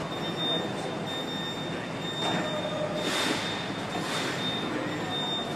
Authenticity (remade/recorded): recorded